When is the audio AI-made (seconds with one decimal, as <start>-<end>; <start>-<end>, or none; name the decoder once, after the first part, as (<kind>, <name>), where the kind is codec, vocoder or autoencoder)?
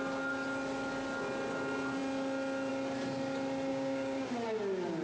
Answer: 3.7-4.3 (codec, DAC)